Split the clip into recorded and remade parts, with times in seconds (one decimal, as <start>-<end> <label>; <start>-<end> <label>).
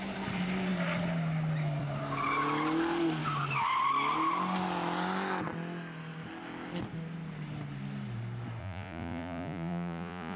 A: 0.0-8.6 recorded; 8.6-10.4 remade